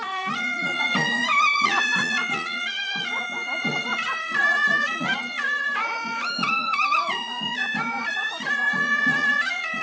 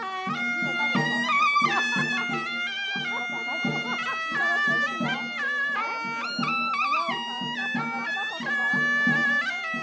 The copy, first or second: first